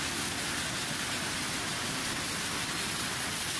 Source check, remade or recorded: recorded